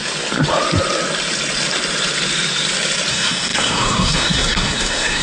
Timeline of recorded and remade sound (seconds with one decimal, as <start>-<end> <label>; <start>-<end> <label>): 0.0-3.1 recorded; 3.1-5.2 remade